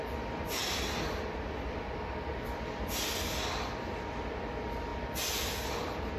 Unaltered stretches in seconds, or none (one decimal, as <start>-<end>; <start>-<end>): 0.0-6.2